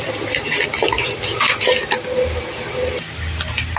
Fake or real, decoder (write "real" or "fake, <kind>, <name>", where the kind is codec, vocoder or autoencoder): real